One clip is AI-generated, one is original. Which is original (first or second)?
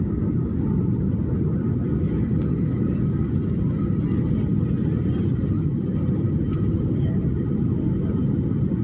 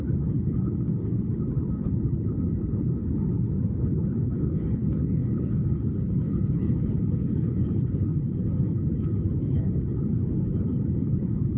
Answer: first